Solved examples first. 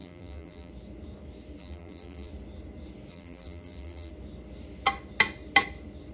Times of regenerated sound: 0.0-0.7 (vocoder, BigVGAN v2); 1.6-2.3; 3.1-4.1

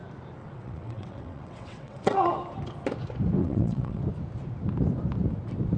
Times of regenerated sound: 0.4-2.3 (vocoder, WaveNeXt); 3.4-4.0

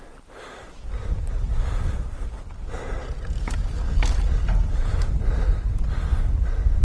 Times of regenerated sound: none

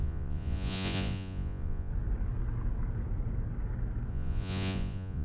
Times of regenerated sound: 0.0-1.9 (vocoder, Vocos); 4.1-5.2

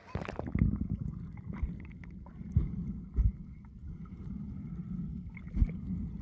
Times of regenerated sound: 3.8-4.8 (vocoder, BigVGAN v2)

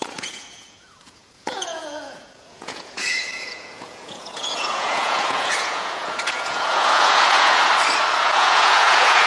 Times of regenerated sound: 0.0-7.7 (vocoder, Vocos); 8.2-9.3

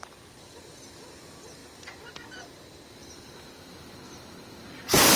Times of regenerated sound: 3.0-5.2 (vocoder, BigVGAN v2)

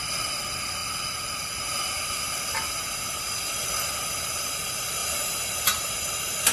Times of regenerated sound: 5.0-5.9 (vocoder, BigVGAN v2)